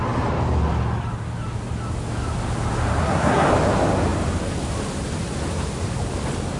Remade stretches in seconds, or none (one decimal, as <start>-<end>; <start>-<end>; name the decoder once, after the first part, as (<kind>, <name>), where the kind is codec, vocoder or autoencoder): 3.0-3.5 (codec, SNAC)